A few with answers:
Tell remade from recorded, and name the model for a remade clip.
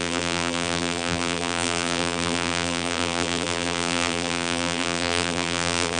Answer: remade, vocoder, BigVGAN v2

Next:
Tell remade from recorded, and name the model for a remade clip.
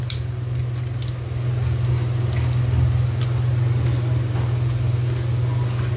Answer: recorded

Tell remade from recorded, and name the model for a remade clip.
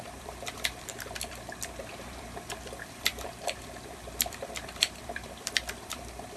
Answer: remade, vocoder, BigVGAN v2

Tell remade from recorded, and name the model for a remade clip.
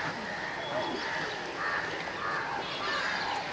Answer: recorded